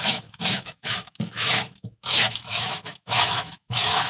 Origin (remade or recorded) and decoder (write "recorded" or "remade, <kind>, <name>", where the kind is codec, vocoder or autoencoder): remade, autoencoder, DAC-VAE